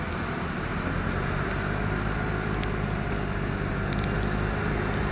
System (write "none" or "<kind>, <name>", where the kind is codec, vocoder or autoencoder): none